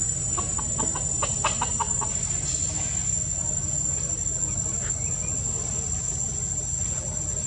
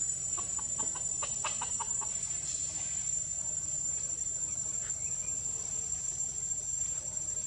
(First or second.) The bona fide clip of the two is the first